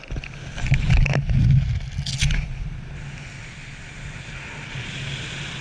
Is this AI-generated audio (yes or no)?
no